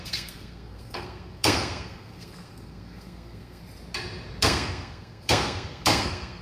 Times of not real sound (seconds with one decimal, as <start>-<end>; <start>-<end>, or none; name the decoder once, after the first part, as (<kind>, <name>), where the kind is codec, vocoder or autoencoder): 0.0-3.6 (codec, SNAC); 4.4-6.4